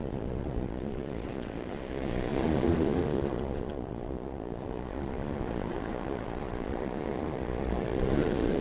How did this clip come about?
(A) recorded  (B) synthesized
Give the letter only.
B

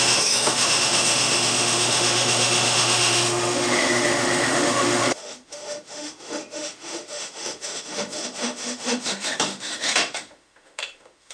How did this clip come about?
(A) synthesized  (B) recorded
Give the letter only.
A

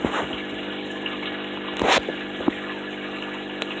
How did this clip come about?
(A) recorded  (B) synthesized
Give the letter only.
A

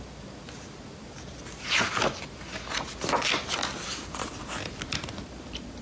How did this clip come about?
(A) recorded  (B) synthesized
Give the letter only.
A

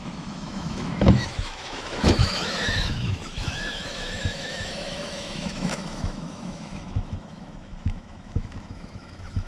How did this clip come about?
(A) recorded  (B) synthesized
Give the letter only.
B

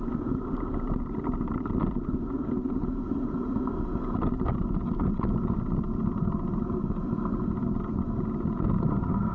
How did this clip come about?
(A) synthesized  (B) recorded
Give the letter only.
B